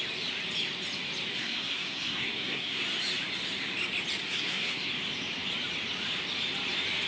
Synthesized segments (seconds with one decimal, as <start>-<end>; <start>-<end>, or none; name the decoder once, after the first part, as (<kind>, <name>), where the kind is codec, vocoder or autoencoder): 1.3-2.8 (codec, SNAC); 4.2-4.9

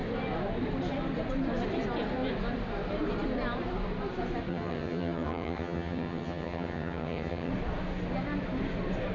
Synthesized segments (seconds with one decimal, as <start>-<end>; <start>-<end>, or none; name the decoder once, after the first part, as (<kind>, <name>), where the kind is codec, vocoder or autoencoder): 4.5-7.5 (vocoder, HiFi-GAN)

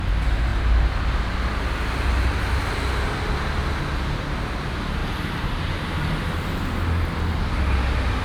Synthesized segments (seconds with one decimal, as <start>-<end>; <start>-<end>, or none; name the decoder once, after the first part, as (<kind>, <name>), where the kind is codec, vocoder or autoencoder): 5.0-5.7 (vocoder, BigVGAN v2)